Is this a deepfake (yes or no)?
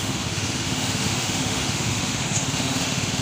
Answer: yes